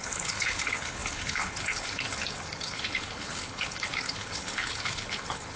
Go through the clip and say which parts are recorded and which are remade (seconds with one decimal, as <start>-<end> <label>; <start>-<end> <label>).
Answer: 0.0-5.6 remade